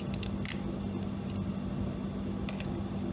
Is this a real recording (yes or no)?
yes